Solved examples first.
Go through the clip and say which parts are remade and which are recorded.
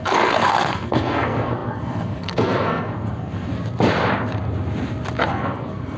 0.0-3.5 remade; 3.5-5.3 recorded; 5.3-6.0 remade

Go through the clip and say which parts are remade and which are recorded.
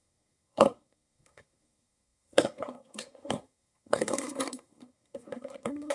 0.0-5.9 remade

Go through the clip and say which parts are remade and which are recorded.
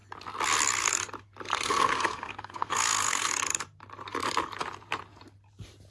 0.0-1.5 recorded; 1.5-3.3 remade; 3.3-5.9 recorded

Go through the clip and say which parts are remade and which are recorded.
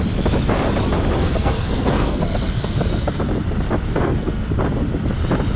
0.0-1.2 recorded; 1.2-3.2 remade; 3.2-3.9 recorded; 3.9-4.5 remade; 4.5-5.6 recorded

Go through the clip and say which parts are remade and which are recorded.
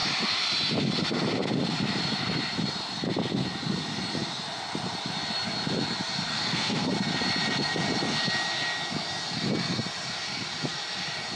0.0-6.3 recorded; 6.3-6.9 remade; 6.9-11.3 recorded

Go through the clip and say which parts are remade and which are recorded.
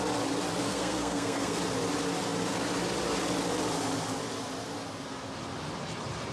0.0-0.7 recorded; 0.7-1.6 remade; 1.6-6.3 recorded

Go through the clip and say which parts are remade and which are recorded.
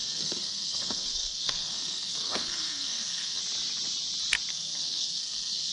0.0-3.4 remade; 3.4-4.5 recorded; 4.5-5.7 remade